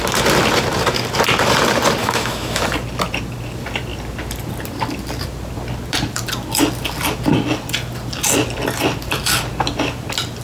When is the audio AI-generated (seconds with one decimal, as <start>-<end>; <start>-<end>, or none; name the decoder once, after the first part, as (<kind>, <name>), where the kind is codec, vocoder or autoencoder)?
2.0-2.6 (autoencoder, DAC-VAE)